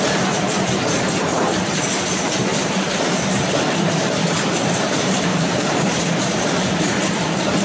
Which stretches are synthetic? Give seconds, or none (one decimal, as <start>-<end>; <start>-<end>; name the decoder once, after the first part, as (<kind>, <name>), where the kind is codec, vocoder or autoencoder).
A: 1.3-1.8 (vocoder, BigVGAN v2); 2.5-3.2; 5.3-7.1